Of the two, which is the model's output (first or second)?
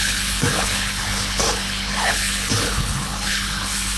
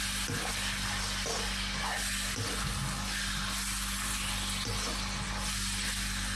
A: first